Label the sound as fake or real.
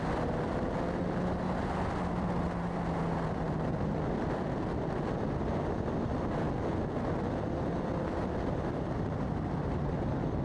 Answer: real